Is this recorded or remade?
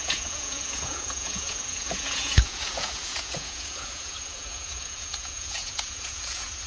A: remade